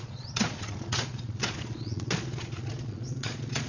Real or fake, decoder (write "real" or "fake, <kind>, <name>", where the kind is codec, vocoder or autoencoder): fake, vocoder, Vocos